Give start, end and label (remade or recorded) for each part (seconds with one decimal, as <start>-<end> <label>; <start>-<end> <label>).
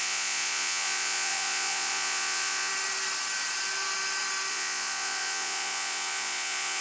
0.0-2.7 remade; 2.7-4.5 recorded; 4.5-6.8 remade